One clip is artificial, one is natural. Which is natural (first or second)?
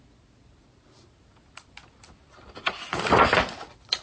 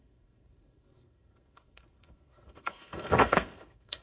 first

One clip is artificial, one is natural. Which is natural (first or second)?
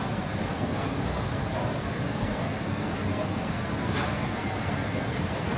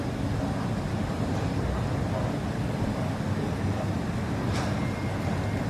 second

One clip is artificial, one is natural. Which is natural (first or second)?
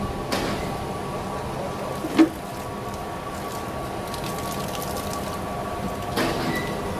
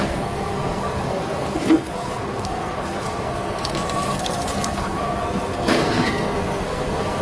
first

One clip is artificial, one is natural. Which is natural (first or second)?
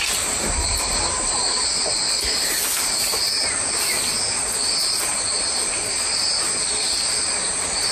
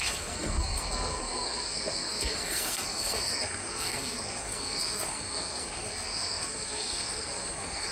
first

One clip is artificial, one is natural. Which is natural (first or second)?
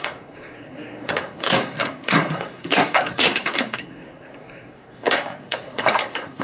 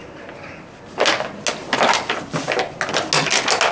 second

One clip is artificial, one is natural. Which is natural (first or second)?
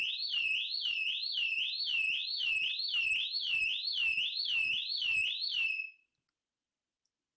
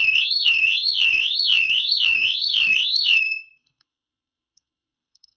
first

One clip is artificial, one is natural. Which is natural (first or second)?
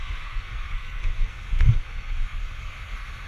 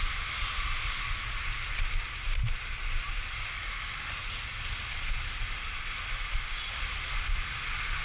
second